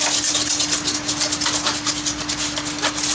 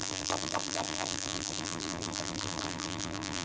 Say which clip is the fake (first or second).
second